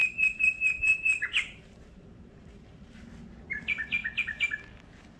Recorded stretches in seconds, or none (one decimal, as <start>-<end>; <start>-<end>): 3.0-5.2